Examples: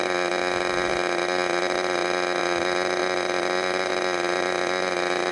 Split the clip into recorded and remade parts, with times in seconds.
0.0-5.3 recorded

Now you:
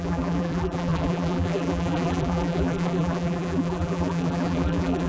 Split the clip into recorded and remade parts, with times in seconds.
0.0-5.1 remade

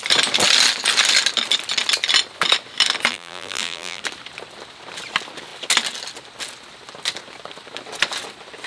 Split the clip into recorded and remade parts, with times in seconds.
0.0-3.1 recorded; 3.1-4.0 remade; 4.0-8.7 recorded

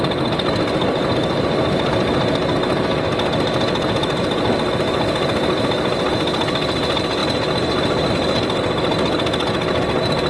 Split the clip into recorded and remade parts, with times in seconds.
0.0-10.3 recorded

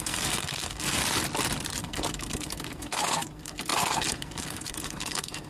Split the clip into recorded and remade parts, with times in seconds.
0.0-1.0 remade; 1.0-1.8 recorded; 1.8-5.5 remade

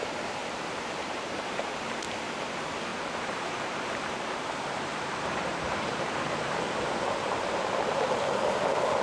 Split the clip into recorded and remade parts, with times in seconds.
0.0-0.4 recorded; 0.4-1.7 remade; 1.7-2.9 recorded; 2.9-6.1 remade; 6.1-9.0 recorded